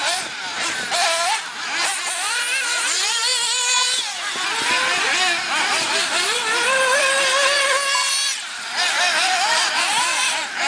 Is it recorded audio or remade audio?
recorded